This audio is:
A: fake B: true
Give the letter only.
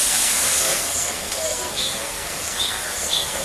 A